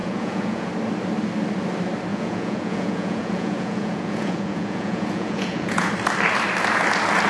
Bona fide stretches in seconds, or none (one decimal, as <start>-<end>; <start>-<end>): 0.7-2.1; 5.9-7.3